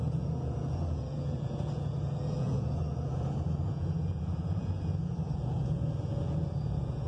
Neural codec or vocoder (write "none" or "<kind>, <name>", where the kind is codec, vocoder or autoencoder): vocoder, Vocos